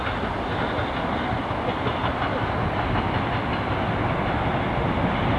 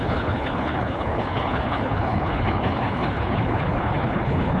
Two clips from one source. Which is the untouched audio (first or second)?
first